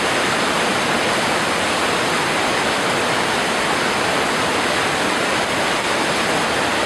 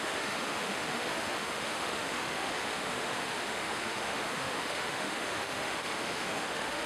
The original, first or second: first